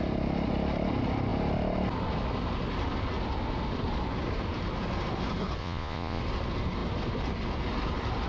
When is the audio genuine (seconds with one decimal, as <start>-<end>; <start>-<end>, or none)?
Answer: 0.0-5.6; 6.2-8.3